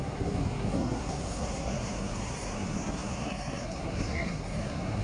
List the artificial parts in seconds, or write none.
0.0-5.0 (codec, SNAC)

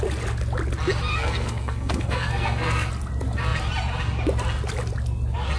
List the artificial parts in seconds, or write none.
1.1-2.9 (codec, SNAC)

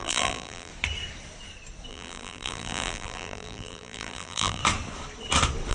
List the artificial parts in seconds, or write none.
0.0-0.7 (vocoder, BigVGAN v2); 1.9-4.6

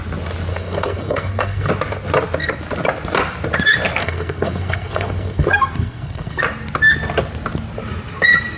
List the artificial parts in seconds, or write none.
0.5-1.7 (codec, SNAC); 4.0-6.4

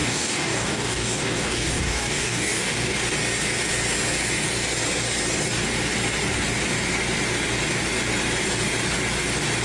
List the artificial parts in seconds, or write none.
0.0-3.0 (codec, DAC)

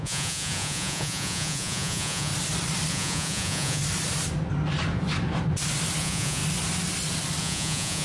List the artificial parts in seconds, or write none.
0.0-2.3 (vocoder, Vocos); 2.9-3.8; 6.0-6.4; 7.4-8.0

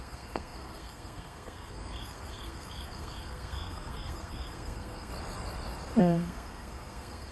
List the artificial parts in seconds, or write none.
0.0-5.1 (codec, SNAC); 6.0-7.3

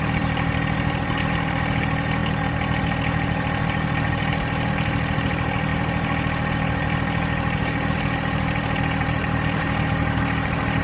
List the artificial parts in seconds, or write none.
0.0-10.8 (vocoder, BigVGAN v2)